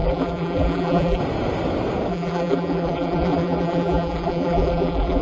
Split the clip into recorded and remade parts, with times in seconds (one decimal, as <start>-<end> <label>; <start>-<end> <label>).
0.0-1.2 remade; 1.2-2.1 recorded; 2.1-5.2 remade